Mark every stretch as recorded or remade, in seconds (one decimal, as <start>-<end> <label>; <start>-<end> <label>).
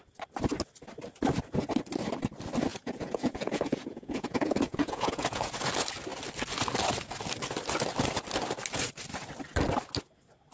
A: 0.0-2.7 recorded; 2.7-5.5 remade; 5.5-10.5 recorded